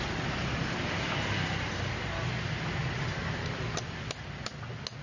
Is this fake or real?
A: real